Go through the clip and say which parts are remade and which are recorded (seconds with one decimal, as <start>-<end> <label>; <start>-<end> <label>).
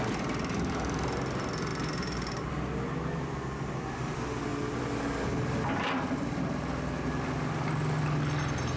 0.0-1.7 recorded; 1.7-2.5 remade; 2.5-8.8 recorded